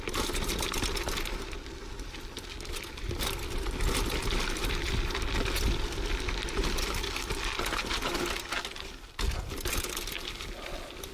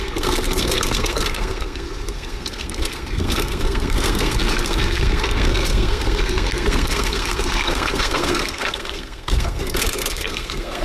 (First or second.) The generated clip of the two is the second